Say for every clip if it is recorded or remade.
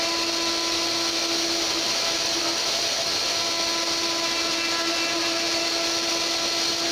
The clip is recorded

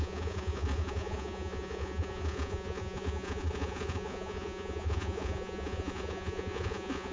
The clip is remade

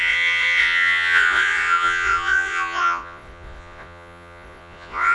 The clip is remade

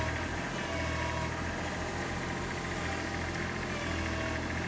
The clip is recorded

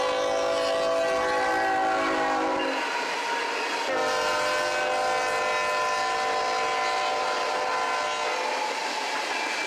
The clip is recorded